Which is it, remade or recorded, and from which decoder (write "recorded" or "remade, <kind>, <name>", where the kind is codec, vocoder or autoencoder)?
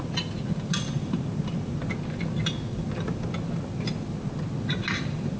recorded